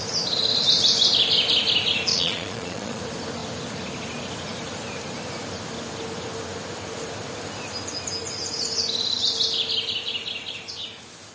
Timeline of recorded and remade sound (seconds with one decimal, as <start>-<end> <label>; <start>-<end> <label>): 0.0-2.1 recorded; 2.1-3.0 remade; 3.0-11.3 recorded